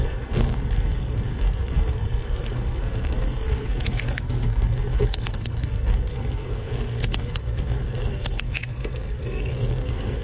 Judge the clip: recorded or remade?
remade